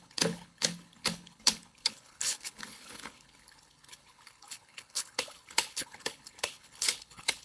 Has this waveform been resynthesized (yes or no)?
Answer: yes